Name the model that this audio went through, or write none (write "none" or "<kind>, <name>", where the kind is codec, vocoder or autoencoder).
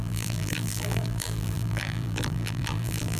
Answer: vocoder, BigVGAN v2